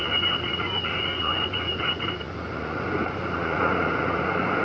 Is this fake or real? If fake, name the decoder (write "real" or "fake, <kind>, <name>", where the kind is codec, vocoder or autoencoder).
fake, vocoder, Vocos